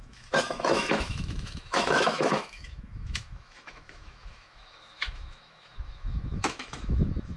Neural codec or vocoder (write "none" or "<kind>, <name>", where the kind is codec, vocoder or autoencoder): autoencoder, DAC-VAE